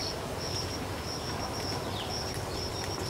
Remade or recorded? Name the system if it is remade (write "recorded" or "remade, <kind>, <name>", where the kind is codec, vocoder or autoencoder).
recorded